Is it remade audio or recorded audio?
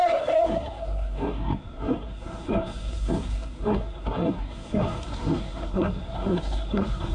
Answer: remade